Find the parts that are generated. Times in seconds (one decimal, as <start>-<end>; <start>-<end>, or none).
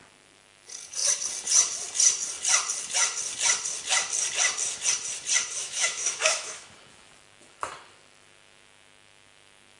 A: 5.6-6.7